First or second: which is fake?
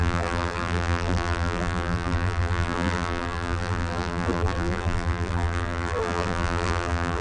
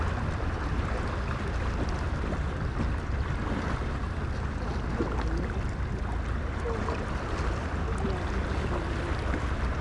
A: first